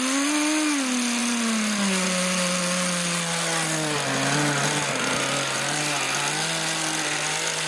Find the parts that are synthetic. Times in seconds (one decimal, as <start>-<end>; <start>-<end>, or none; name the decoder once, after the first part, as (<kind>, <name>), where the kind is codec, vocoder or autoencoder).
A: none